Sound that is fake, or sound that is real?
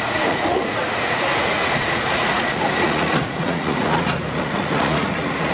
fake